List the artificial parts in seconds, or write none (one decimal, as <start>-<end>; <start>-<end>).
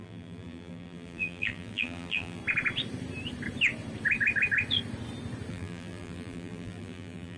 0.0-2.4; 5.5-7.4